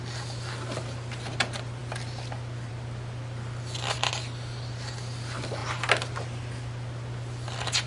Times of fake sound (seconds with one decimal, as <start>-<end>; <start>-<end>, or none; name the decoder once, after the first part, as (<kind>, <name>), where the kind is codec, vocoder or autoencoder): 0.0-7.9 (vocoder, BigVGAN v2)